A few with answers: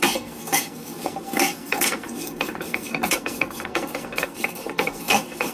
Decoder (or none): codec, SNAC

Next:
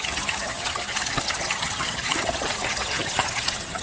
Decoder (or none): vocoder, HiFi-GAN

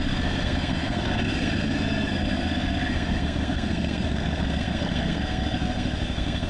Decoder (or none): codec, SNAC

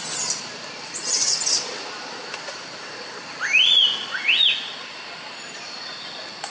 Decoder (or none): none